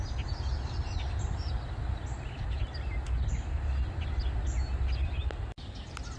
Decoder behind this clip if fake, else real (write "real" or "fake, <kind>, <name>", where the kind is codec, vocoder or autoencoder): real